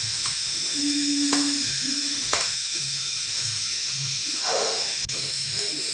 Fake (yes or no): yes